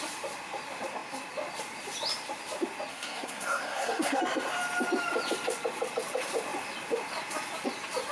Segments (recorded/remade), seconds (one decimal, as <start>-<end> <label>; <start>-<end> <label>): 0.0-2.9 recorded; 2.9-4.2 remade; 4.2-8.1 recorded